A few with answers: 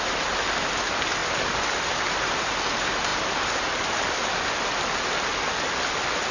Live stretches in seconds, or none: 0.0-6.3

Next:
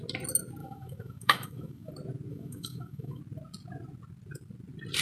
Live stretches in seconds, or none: 0.0-0.6; 1.9-2.3; 3.2-5.0